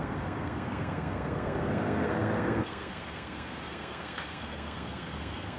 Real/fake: fake